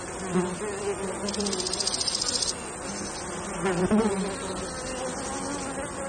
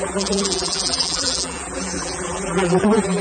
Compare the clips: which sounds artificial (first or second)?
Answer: second